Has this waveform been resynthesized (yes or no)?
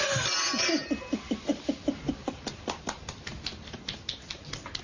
no